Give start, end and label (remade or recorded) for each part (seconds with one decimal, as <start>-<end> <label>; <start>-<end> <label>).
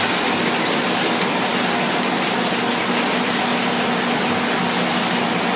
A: 0.0-5.6 recorded